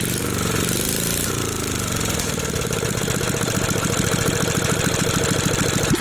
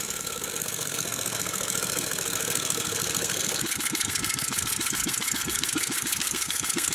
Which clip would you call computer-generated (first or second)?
second